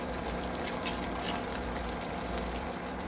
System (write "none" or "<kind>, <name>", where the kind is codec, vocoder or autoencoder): vocoder, BigVGAN v2